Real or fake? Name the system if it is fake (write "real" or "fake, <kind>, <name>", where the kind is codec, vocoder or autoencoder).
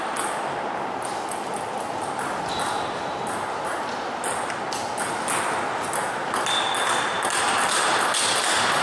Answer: real